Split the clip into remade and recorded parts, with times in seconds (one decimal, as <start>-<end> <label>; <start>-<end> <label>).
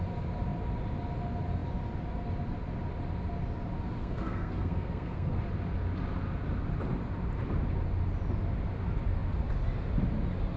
0.0-4.0 recorded; 4.0-5.4 remade; 5.4-10.6 recorded